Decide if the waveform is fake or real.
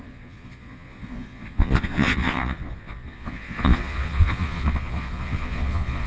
fake